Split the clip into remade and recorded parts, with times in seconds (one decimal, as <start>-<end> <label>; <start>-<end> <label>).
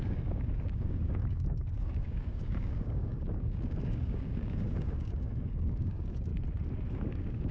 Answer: 0.0-6.3 remade; 6.3-6.9 recorded; 6.9-7.5 remade